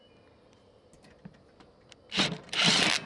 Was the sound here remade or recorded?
recorded